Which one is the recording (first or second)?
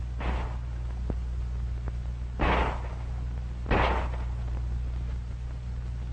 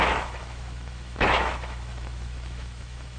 first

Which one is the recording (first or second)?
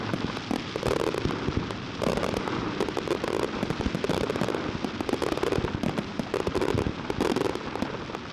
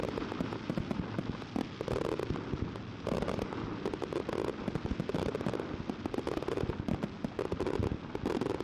second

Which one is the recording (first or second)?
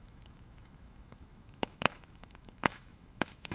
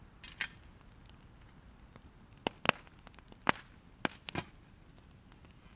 second